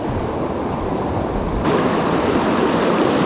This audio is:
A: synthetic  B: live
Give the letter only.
B